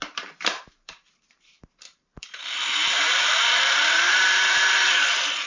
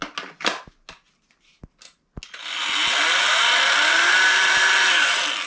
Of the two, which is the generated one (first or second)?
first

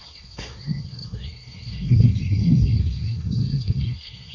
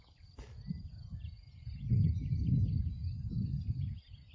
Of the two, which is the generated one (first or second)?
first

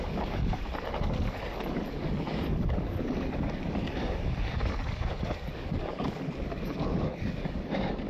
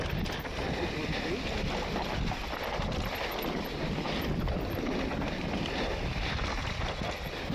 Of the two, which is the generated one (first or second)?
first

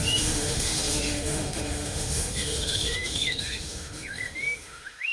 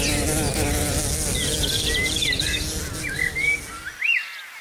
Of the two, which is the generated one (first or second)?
first